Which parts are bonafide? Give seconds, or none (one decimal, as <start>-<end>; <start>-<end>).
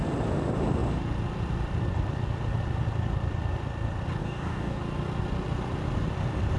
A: 0.0-4.2; 4.8-6.6